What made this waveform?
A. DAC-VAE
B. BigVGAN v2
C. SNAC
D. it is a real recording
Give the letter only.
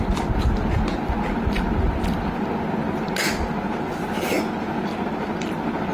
D